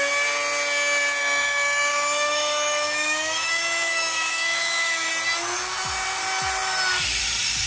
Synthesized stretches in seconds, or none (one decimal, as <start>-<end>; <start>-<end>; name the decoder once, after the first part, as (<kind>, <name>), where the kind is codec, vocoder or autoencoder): 1.2-5.1 (autoencoder, DAC-VAE)